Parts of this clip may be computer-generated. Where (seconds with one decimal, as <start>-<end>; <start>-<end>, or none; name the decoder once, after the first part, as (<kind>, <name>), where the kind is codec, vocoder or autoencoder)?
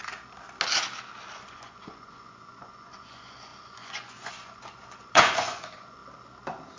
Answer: 1.3-6.0 (vocoder, Vocos)